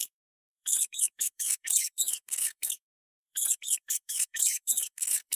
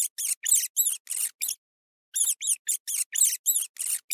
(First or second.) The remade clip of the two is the first